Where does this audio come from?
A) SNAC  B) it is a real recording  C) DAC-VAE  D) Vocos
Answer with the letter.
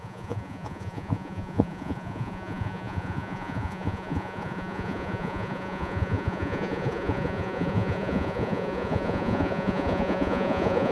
D